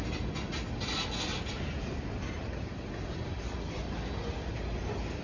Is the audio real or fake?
real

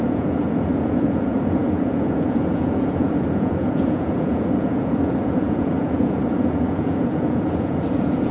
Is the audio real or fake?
fake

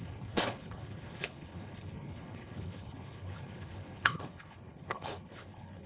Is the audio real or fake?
fake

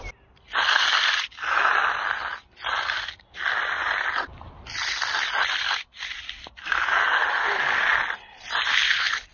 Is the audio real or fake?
real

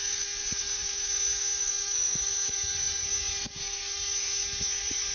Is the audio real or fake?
fake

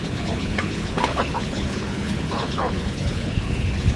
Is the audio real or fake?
fake